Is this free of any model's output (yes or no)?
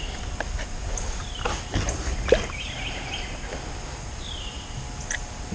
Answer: yes